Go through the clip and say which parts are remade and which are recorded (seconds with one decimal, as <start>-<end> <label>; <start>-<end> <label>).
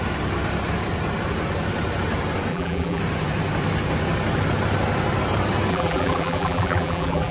0.0-2.5 recorded; 2.5-3.0 remade; 3.0-5.7 recorded; 5.7-7.3 remade